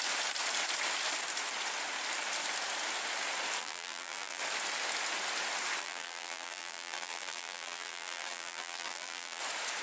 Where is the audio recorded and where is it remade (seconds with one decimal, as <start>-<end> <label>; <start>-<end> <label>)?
0.0-3.6 recorded; 3.6-4.4 remade; 4.4-5.8 recorded; 5.8-9.4 remade; 9.4-9.8 recorded